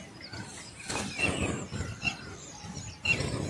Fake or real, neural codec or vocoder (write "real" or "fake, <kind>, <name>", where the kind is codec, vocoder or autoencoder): real